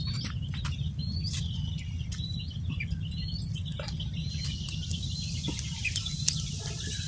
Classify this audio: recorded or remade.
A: recorded